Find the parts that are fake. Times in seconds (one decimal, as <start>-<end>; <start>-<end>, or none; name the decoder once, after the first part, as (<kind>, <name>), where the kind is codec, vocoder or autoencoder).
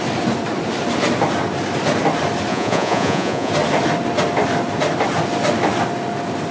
2.5-3.5 (vocoder, Vocos)